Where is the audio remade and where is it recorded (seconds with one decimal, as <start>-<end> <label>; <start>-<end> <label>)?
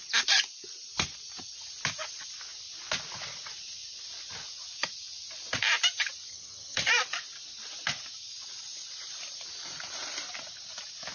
0.0-6.3 recorded; 6.3-6.9 remade; 6.9-11.1 recorded